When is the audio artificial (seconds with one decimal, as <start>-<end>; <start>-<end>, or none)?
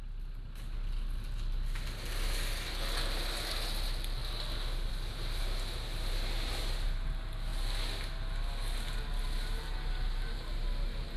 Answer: none